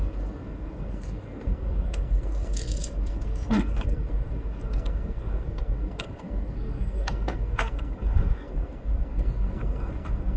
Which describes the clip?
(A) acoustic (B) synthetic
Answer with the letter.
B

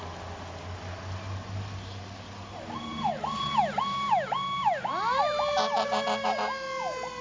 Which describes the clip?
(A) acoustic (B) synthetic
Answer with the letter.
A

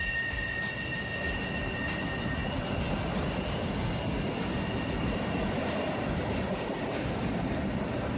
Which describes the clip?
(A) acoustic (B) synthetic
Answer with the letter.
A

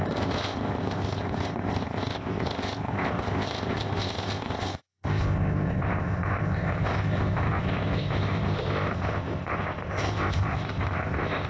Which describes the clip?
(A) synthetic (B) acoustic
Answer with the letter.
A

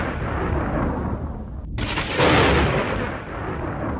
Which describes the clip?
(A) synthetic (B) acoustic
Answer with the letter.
B